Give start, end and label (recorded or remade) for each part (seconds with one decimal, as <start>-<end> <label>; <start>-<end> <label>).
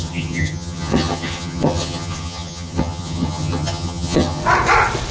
0.0-4.4 remade; 4.4-5.1 recorded